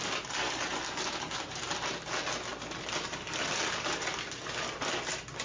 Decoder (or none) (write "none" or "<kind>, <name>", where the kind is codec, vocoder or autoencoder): none